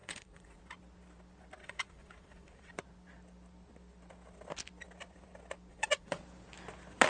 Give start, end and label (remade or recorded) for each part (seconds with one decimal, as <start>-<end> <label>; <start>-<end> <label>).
0.0-0.6 remade; 0.6-1.6 recorded; 1.6-2.7 remade; 2.7-5.7 recorded; 5.7-6.2 remade; 6.2-7.1 recorded